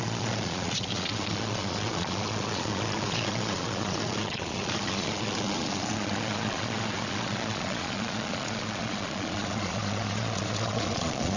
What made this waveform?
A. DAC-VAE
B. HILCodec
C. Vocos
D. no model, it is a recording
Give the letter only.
C